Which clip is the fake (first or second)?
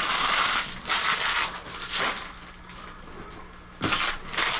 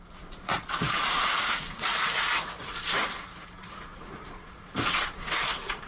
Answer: second